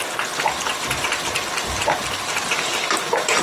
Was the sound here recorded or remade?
recorded